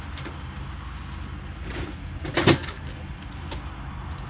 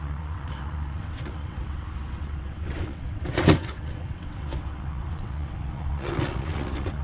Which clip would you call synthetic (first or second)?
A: second